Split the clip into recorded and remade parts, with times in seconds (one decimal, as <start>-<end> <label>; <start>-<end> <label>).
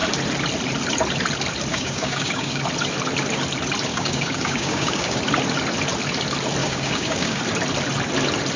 0.0-1.7 recorded; 1.7-2.6 remade; 2.6-3.9 recorded; 3.9-5.2 remade; 5.2-6.6 recorded; 6.6-7.4 remade; 7.4-8.6 recorded